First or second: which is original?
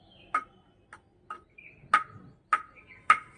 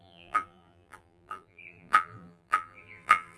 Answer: first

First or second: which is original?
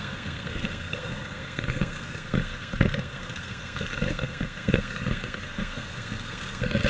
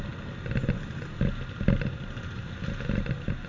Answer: second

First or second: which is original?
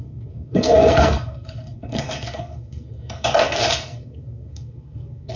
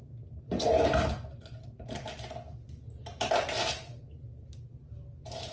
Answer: second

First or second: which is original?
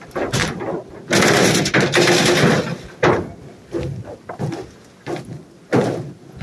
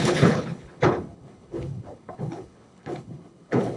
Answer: first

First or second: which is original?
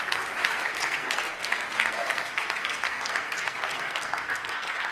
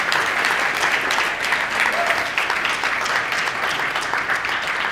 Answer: second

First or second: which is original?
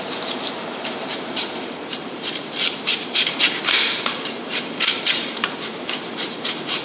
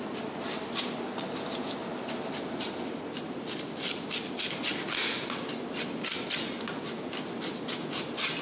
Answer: second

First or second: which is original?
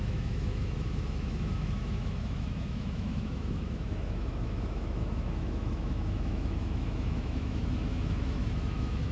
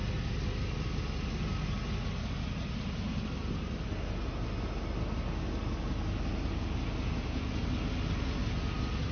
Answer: second